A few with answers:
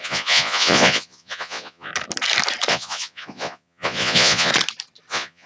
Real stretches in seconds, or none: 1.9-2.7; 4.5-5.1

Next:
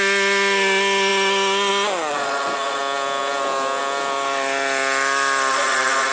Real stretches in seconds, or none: 0.0-2.1; 2.8-5.5

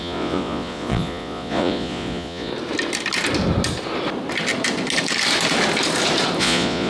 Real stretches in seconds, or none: 2.5-6.4

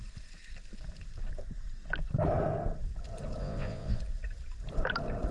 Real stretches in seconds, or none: 0.0-3.4; 4.0-5.3

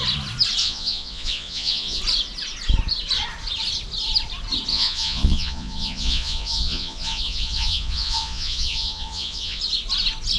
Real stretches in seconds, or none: 0.0-0.6; 2.0-4.7; 9.6-10.4

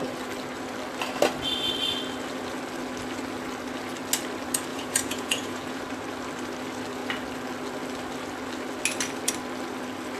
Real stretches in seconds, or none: 0.0-4.7; 5.8-10.2

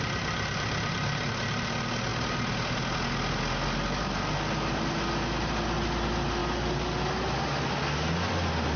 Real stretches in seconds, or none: 0.0-8.8